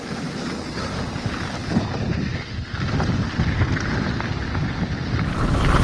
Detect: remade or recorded recorded